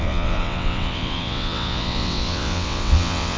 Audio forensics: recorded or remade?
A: remade